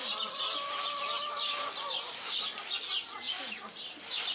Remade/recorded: recorded